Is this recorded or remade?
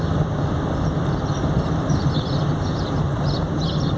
recorded